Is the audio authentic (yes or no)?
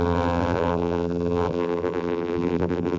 no